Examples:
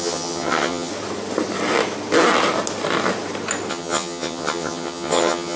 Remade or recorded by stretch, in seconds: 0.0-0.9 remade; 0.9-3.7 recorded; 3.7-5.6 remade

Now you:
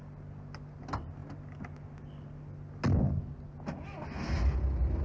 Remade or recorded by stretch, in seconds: 0.0-5.0 recorded

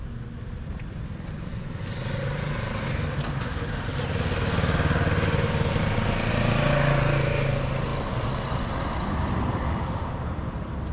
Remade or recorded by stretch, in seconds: 0.0-10.9 recorded

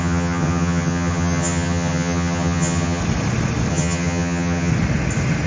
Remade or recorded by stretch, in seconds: 0.0-3.0 remade; 3.0-3.7 recorded; 3.7-4.7 remade; 4.7-5.5 recorded

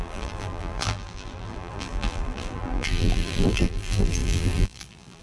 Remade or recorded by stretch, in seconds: 0.0-5.2 remade

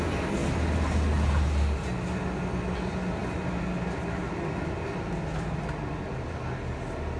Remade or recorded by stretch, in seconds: 0.0-7.2 recorded